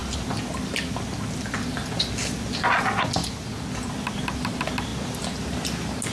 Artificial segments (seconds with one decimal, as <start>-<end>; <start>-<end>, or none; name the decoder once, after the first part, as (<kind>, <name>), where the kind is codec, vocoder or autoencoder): none